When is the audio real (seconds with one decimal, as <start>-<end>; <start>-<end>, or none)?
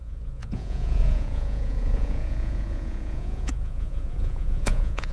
none